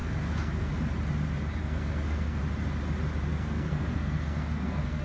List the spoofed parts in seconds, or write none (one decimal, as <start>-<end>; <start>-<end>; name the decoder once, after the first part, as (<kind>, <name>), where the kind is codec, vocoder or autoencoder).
0.0-0.7 (codec, SNAC); 1.6-2.4; 3.3-5.0